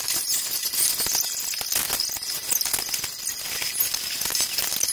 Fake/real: real